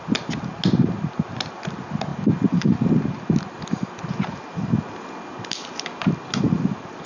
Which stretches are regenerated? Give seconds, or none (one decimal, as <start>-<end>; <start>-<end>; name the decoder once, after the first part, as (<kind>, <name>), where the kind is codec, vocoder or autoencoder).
none